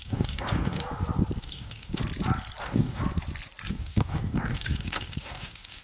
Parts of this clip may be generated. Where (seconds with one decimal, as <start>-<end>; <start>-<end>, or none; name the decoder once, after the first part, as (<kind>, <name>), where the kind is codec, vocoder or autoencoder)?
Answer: 0.0-0.8 (codec, DAC); 1.4-2.0; 2.6-3.0; 3.7-5.8